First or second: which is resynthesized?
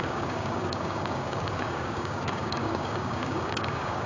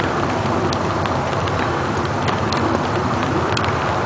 first